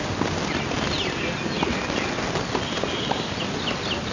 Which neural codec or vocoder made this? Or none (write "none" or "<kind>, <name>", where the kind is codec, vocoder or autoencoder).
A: none